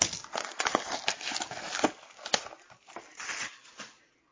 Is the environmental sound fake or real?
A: real